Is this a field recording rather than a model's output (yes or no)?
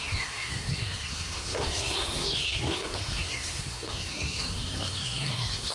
no